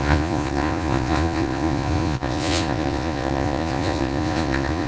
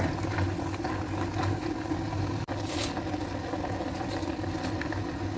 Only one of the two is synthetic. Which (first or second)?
first